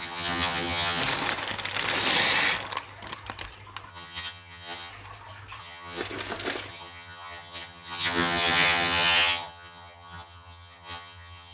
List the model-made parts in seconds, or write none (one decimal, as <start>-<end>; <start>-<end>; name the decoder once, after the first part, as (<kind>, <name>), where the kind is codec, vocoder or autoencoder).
0.0-1.0 (vocoder, HiFi-GAN); 3.9-4.9; 5.6-6.0; 6.7-11.5